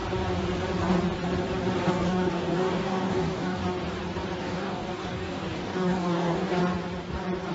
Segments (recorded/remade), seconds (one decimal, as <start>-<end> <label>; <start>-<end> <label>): 0.0-1.9 recorded; 1.9-3.6 remade; 3.6-4.4 recorded; 4.4-6.6 remade; 6.6-7.5 recorded